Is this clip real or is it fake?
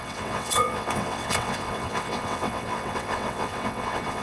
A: fake